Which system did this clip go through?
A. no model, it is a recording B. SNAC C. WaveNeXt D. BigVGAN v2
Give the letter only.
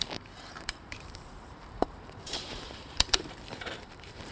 D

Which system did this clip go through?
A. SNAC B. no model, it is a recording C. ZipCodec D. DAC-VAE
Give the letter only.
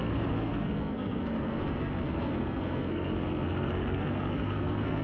A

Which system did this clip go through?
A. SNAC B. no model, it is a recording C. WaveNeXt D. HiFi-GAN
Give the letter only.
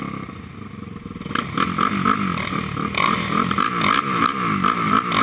B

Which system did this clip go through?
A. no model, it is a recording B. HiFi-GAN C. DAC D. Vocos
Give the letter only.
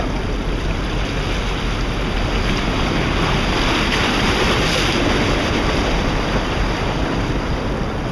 A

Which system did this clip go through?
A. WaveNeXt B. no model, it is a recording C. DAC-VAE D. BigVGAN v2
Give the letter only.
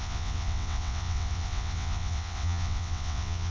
A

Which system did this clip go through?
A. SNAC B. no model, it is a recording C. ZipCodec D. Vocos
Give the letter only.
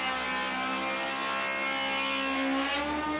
B